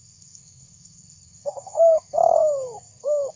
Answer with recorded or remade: remade